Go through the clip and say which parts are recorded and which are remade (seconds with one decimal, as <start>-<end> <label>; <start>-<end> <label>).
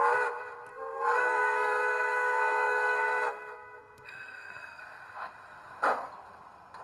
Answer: 0.0-0.7 recorded; 0.7-4.8 remade; 4.8-6.8 recorded